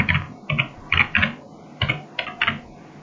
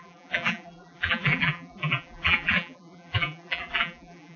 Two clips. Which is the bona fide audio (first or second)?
first